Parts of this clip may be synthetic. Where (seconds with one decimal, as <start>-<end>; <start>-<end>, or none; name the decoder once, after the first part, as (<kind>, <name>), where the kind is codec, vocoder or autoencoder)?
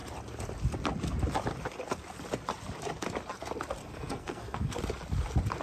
3.8-4.8 (codec, SNAC)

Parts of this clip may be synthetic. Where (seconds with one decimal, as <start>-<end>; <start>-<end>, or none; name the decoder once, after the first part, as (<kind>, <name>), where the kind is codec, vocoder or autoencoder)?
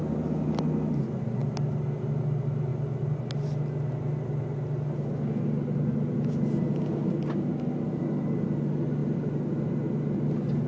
none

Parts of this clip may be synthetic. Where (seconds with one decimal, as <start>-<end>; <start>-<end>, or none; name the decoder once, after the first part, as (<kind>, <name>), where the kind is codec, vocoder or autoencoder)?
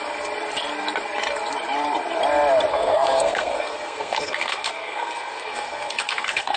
2.7-6.6 (codec, SNAC)